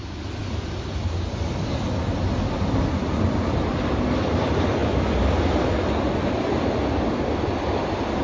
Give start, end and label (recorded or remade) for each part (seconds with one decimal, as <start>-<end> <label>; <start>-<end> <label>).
0.0-8.2 recorded